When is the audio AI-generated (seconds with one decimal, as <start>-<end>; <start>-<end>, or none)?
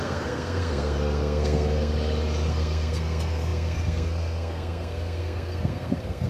0.0-1.9; 2.5-6.3